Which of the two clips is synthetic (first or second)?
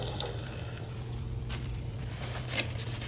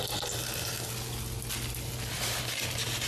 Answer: first